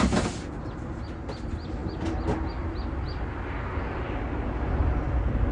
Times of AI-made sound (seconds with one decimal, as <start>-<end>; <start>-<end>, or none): none